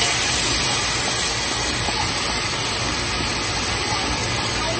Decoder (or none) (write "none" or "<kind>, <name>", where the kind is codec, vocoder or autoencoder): none